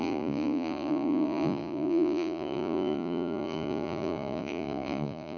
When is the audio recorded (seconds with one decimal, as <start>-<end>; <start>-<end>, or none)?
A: none